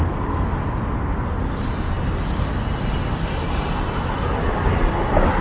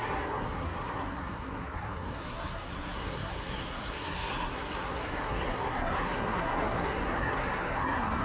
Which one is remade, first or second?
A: second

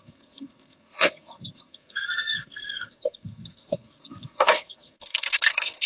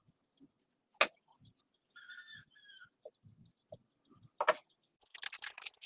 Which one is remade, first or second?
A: first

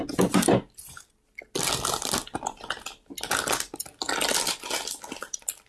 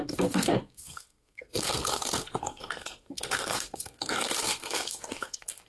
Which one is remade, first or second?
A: second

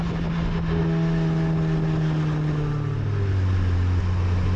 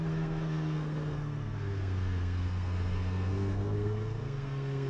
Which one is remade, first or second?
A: second